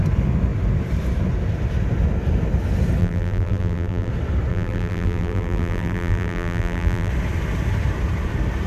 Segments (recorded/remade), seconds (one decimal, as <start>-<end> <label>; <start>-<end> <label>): 0.0-3.0 recorded; 3.0-4.1 remade; 4.1-4.5 recorded; 4.5-7.1 remade; 7.1-8.7 recorded